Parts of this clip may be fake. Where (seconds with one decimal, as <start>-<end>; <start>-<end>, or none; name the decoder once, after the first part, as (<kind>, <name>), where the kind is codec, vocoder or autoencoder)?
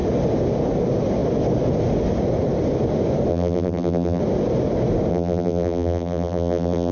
3.3-4.2 (vocoder, BigVGAN v2); 5.1-6.9